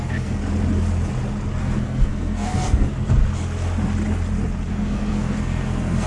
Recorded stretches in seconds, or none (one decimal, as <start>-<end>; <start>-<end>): 0.4-1.6; 3.2-4.7